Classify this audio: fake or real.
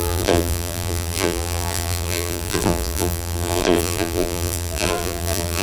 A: fake